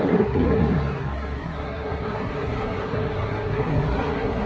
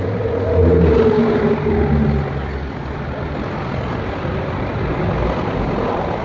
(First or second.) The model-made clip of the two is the first